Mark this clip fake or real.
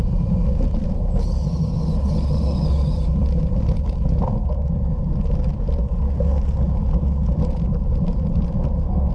real